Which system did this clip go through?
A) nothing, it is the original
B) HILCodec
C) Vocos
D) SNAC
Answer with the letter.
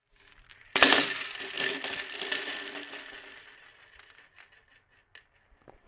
A